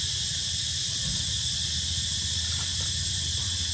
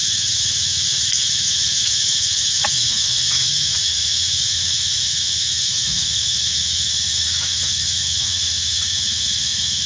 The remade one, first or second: second